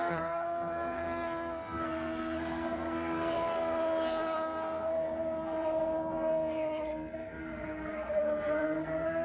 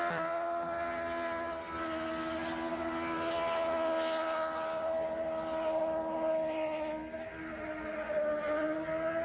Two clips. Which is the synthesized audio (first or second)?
first